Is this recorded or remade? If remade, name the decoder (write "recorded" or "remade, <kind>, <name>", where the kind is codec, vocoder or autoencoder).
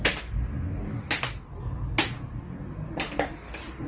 recorded